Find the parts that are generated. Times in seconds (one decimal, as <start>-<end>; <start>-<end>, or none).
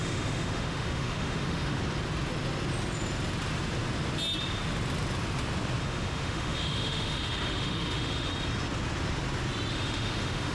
0.0-1.8; 5.8-8.3; 9.7-10.5